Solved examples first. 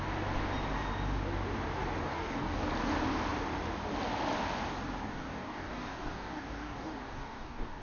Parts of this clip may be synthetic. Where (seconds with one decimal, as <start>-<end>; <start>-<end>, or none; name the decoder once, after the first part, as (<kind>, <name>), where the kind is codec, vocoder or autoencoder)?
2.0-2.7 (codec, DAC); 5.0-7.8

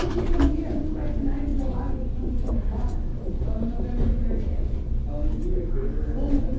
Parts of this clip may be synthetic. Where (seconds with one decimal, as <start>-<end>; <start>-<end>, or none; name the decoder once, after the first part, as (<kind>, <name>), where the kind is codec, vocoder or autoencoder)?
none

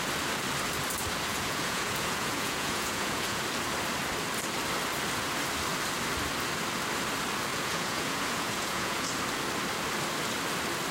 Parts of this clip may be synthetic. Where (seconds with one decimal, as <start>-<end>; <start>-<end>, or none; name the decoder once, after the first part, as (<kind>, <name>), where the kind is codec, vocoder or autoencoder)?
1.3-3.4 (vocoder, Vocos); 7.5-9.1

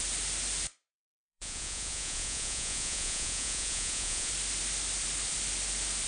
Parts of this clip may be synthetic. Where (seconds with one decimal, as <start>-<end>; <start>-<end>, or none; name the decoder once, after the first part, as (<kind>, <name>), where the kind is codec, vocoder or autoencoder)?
1.0-4.3 (vocoder, Vocos)

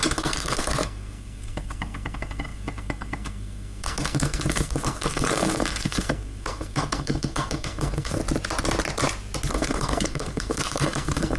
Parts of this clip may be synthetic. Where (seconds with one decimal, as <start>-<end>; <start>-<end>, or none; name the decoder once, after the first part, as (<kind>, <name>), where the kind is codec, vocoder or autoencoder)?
0.0-8.2 (codec, SNAC); 9.5-11.4